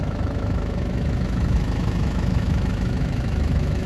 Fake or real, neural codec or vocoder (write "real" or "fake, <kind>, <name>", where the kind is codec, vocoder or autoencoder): fake, autoencoder, DAC-VAE